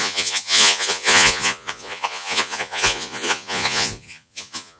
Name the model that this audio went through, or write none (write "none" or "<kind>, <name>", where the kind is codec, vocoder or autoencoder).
vocoder, Vocos